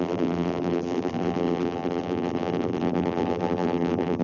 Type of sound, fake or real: fake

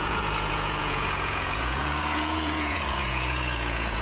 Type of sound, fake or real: fake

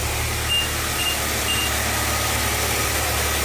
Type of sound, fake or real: real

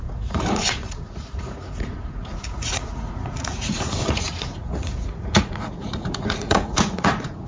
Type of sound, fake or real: fake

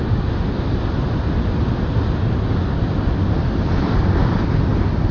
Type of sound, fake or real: real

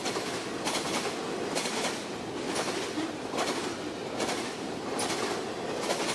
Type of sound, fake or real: real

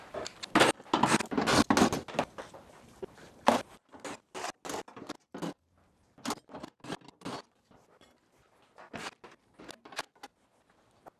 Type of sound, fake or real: real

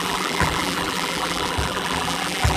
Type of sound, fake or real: fake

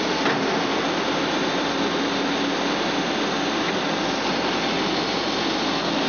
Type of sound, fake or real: real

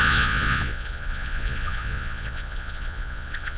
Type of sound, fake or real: fake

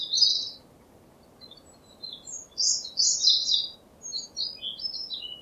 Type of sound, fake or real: real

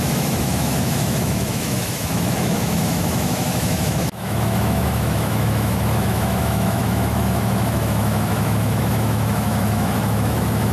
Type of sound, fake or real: fake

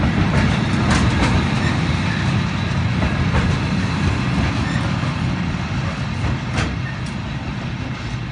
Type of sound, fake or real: real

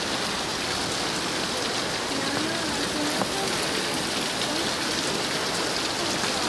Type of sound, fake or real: real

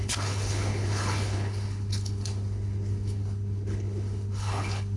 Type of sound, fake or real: fake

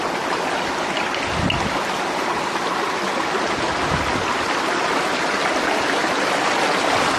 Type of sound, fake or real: real